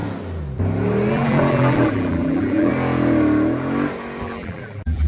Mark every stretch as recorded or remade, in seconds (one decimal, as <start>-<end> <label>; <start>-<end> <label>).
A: 0.0-1.1 recorded; 1.1-2.7 remade; 2.7-4.2 recorded; 4.2-5.1 remade